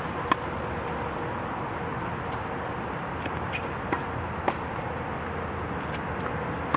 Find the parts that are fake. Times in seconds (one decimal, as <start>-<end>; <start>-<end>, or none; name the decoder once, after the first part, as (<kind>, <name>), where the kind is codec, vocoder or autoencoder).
none